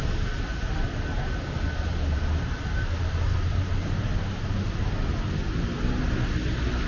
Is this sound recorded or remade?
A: recorded